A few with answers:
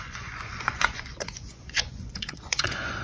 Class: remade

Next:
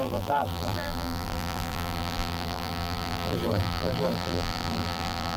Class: remade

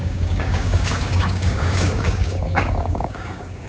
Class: remade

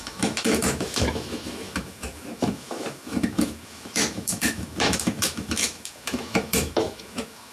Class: remade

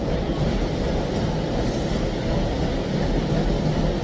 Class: recorded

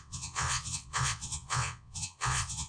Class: remade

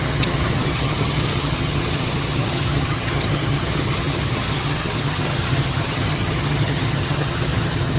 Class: remade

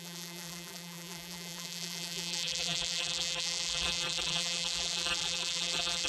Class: remade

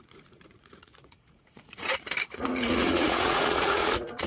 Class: remade